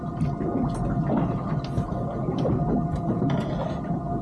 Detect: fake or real real